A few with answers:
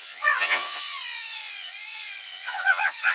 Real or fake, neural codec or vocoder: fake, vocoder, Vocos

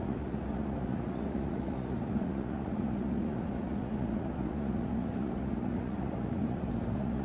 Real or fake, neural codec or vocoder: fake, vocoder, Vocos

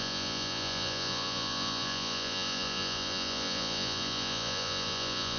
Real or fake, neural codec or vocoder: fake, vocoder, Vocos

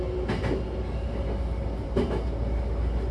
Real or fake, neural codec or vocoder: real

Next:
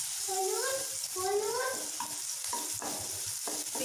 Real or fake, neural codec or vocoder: real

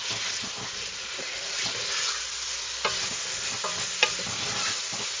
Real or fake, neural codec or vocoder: real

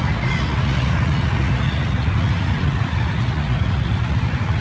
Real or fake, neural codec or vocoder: fake, vocoder, Vocos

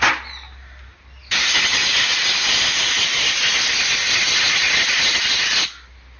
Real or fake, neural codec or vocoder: real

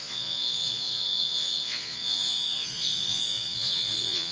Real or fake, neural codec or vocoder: fake, vocoder, Vocos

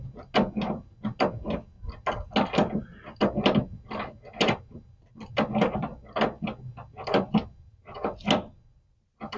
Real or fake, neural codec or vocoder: real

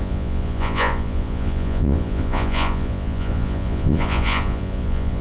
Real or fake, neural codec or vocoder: fake, vocoder, Vocos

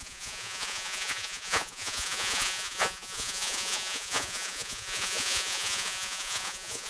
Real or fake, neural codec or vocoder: fake, vocoder, Vocos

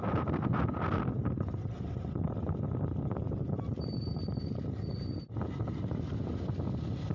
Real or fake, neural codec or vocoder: real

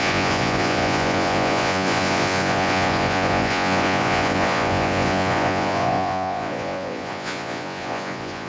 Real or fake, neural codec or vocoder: fake, vocoder, Vocos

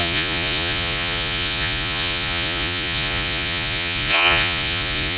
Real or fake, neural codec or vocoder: fake, vocoder, Vocos